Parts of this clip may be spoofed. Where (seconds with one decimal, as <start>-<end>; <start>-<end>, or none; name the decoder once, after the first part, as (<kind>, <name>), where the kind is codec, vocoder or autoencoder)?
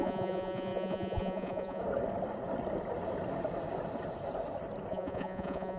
0.0-1.8 (vocoder, Vocos); 4.9-5.8